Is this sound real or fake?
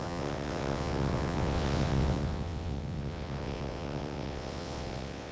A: fake